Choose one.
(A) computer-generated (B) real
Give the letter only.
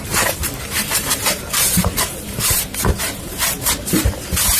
A